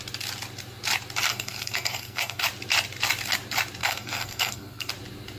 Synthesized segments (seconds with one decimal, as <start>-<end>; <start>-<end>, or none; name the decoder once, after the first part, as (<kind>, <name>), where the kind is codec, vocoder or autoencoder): 1.3-2.4 (codec, SNAC); 3.8-4.9